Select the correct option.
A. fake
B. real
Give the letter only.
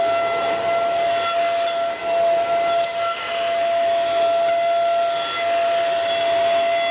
B